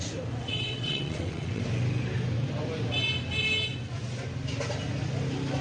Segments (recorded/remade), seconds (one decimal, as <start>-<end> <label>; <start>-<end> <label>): 0.0-0.4 recorded; 0.4-1.6 remade; 1.6-5.6 recorded